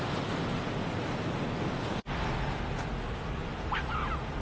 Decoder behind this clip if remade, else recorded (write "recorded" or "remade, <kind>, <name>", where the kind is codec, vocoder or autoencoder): recorded